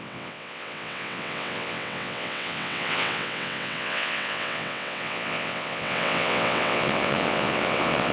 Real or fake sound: fake